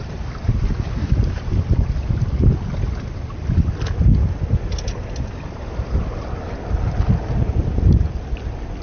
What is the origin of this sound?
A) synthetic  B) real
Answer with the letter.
B